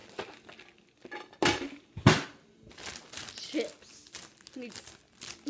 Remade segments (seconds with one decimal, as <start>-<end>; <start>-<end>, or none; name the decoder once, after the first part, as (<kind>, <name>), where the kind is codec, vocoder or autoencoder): none